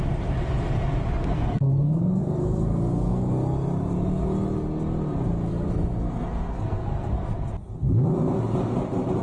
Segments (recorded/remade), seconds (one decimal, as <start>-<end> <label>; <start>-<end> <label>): 0.0-1.2 recorded; 1.2-3.3 remade; 3.3-5.5 recorded; 5.5-7.5 remade; 7.5-9.2 recorded